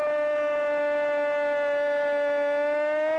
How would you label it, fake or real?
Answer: real